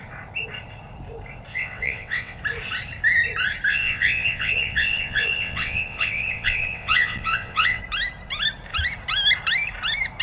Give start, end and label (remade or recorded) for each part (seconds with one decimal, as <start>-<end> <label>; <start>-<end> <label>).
0.0-1.5 recorded; 1.5-2.4 remade; 2.4-3.7 recorded; 3.7-7.8 remade; 7.8-10.2 recorded